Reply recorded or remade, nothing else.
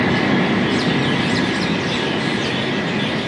recorded